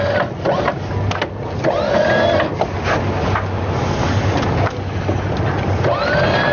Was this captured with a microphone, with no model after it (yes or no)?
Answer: yes